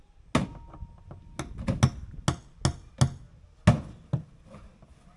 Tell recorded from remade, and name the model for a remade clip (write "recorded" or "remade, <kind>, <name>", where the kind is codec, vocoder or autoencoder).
recorded